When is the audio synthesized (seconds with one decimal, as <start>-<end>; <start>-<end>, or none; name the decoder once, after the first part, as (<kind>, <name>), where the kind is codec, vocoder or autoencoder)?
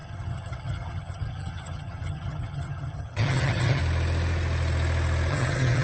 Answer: 0.0-3.8 (vocoder, HiFi-GAN); 5.3-5.8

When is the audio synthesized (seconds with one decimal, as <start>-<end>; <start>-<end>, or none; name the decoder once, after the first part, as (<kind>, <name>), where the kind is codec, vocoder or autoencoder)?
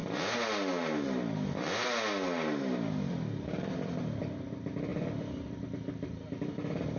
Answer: none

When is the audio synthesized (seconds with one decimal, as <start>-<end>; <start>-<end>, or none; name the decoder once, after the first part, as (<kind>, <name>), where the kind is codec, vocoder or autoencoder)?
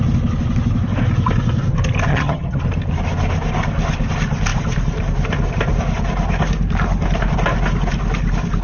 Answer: 2.1-2.6 (vocoder, HiFi-GAN)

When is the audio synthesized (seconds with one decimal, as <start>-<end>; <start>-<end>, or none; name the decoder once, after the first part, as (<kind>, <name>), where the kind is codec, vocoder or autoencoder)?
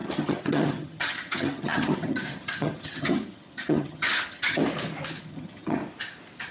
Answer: 0.0-4.6 (vocoder, HiFi-GAN); 5.2-5.8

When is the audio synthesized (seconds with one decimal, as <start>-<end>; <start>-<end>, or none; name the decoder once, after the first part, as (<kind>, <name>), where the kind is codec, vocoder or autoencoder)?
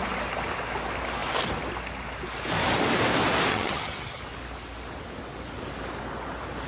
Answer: 3.5-4.2 (vocoder, HiFi-GAN)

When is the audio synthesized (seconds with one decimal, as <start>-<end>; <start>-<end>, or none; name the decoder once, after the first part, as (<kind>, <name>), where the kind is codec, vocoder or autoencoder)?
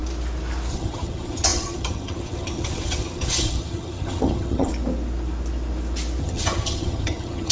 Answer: 0.7-4.7 (vocoder, HiFi-GAN); 6.2-7.5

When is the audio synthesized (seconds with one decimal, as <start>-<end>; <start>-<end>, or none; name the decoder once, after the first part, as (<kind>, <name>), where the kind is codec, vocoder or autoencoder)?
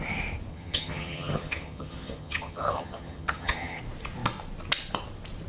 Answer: 0.5-3.8 (vocoder, HiFi-GAN)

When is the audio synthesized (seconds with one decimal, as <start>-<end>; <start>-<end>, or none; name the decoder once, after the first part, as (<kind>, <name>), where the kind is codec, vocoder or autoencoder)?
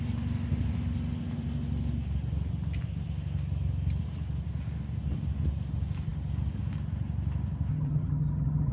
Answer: 7.7-8.7 (vocoder, HiFi-GAN)